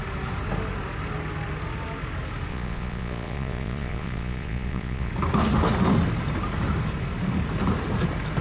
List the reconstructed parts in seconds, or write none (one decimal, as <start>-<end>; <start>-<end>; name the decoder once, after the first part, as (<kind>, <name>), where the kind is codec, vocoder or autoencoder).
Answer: 2.5-5.1 (vocoder, Vocos)